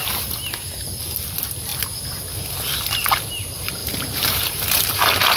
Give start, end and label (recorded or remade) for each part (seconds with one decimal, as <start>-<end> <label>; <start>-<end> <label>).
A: 0.0-3.8 recorded; 3.8-4.9 remade; 4.9-5.4 recorded